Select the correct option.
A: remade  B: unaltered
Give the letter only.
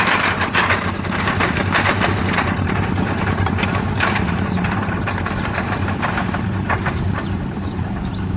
A